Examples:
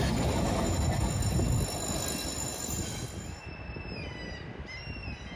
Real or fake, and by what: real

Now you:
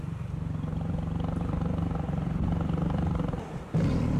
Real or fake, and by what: fake, vocoder, BigVGAN v2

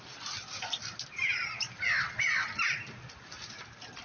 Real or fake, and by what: real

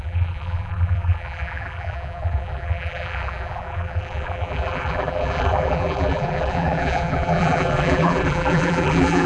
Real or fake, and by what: fake, vocoder, BigVGAN v2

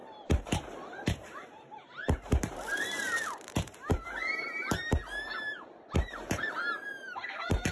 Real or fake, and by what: fake, vocoder, BigVGAN v2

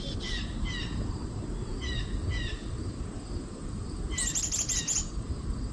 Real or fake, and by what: real